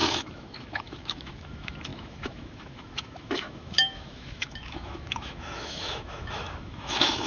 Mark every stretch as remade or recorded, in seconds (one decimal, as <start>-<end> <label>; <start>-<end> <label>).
0.0-7.3 remade